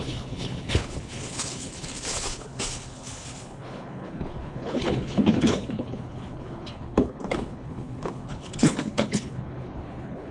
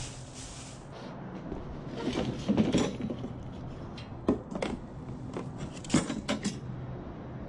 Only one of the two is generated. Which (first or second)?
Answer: first